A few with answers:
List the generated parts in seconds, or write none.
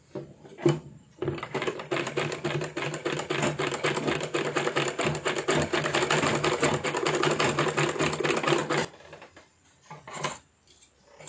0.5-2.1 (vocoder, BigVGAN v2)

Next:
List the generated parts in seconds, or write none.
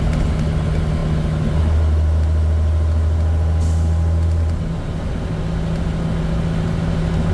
none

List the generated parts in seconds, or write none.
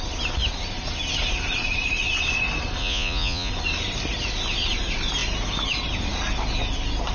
2.8-3.5 (vocoder, Vocos)